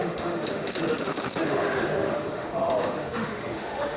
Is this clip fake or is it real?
fake